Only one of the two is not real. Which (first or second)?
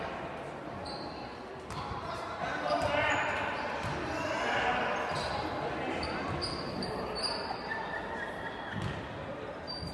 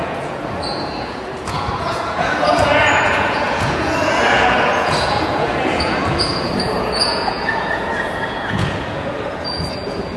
second